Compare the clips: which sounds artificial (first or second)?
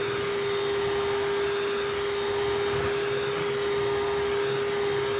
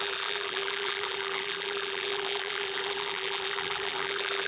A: second